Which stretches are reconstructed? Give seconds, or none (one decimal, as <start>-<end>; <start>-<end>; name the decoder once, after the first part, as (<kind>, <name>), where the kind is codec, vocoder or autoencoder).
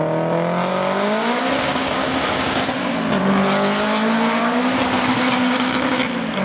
0.7-2.6 (codec, DAC); 4.4-6.0